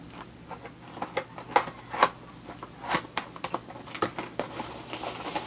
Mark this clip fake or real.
real